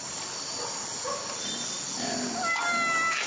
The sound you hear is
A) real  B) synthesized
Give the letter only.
A